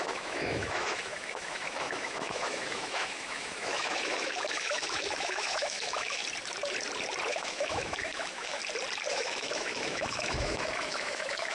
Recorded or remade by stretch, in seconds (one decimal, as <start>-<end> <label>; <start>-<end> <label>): 0.0-6.2 remade; 6.2-7.3 recorded; 7.3-8.6 remade; 8.6-9.1 recorded; 9.1-11.5 remade